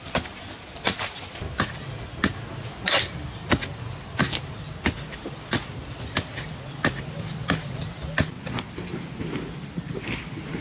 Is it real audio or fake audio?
real